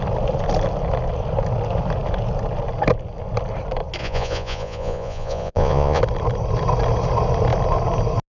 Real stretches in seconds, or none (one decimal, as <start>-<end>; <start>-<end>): 0.0-4.0; 6.0-8.4